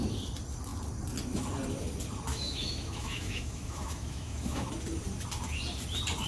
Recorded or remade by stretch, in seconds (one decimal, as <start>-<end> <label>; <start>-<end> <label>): 0.0-2.3 recorded; 2.3-4.7 remade; 4.7-6.3 recorded